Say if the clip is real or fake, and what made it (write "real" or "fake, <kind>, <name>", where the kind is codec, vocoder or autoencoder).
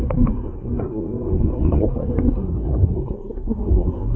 fake, codec, SNAC